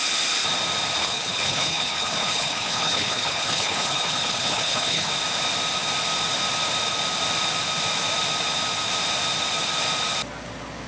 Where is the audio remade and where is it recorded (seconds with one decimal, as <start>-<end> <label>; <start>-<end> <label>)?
0.0-1.0 recorded; 1.0-5.1 remade; 5.1-10.9 recorded